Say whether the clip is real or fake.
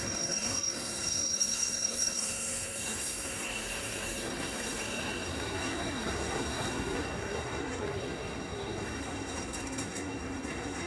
fake